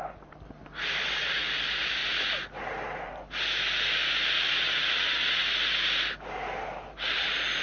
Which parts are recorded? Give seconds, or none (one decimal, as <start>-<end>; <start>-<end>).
0.0-7.6